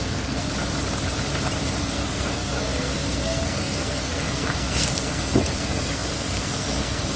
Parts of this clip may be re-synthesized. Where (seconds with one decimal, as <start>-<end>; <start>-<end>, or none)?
0.0-0.5; 1.8-7.2